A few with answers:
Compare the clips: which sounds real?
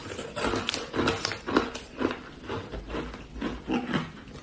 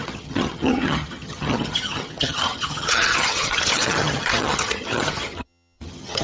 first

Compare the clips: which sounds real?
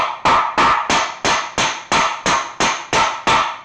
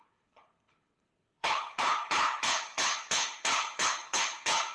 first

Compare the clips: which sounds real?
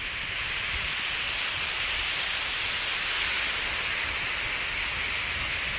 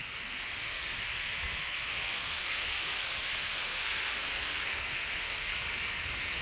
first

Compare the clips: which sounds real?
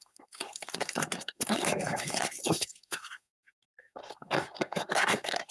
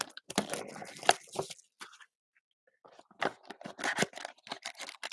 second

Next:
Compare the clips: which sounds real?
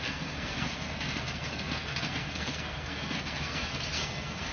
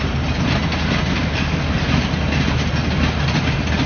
second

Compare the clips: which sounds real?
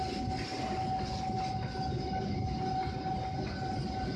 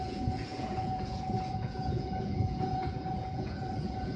first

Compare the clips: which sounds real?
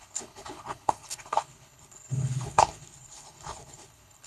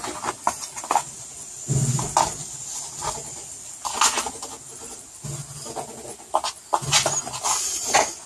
second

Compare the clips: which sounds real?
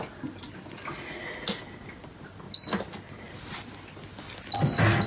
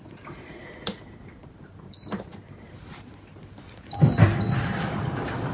first